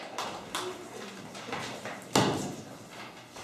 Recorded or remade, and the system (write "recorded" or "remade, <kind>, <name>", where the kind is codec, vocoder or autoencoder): recorded